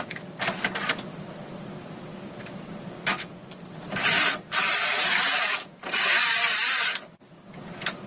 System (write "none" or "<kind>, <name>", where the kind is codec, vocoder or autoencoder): none